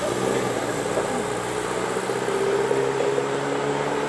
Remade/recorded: recorded